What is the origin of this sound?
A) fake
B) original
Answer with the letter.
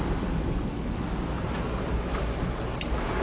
B